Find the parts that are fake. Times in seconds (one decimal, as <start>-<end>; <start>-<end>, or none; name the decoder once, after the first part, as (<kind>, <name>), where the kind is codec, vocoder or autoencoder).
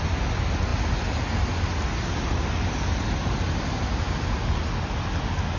none